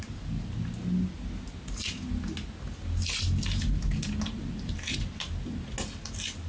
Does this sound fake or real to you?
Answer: real